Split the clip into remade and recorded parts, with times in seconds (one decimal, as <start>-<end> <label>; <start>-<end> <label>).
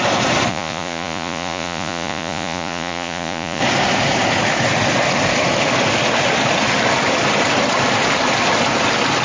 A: 0.0-0.5 recorded; 0.5-3.6 remade; 3.6-9.2 recorded